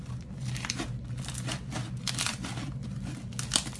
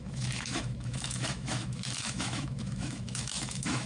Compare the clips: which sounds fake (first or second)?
second